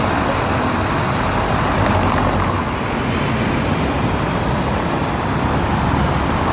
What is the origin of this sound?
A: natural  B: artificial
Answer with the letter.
A